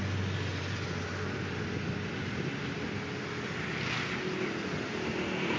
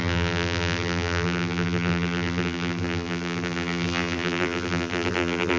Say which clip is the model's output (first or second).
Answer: second